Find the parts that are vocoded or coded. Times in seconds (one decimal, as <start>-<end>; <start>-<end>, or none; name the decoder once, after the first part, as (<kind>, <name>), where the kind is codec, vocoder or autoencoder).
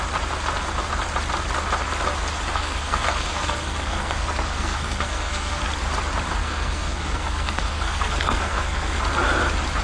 2.5-5.6 (codec, SNAC); 6.4-9.0